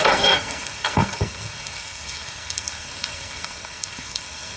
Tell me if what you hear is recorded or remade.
remade